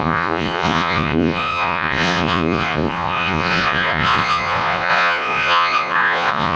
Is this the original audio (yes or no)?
no